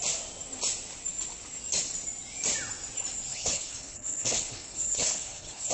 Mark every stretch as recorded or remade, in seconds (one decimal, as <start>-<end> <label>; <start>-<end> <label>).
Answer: 0.0-3.3 recorded; 3.3-5.7 remade